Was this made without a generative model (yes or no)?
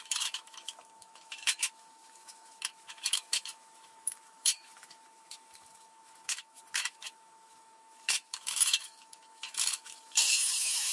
no